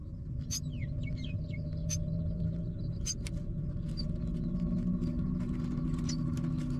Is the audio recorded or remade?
recorded